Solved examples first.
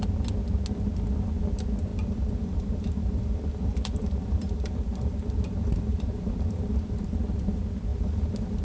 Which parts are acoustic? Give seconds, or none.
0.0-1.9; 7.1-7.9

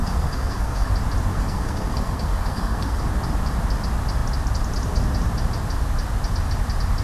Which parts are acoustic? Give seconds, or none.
0.9-1.3; 3.0-7.0

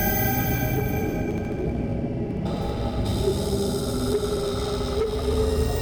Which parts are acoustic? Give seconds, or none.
0.0-0.8